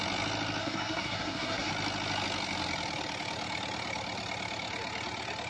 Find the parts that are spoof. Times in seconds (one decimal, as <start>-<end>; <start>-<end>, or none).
0.6-1.7